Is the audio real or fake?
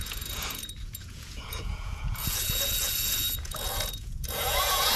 fake